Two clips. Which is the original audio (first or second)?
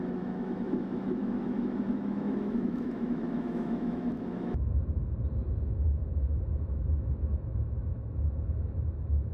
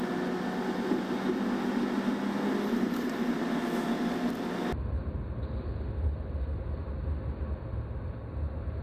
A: second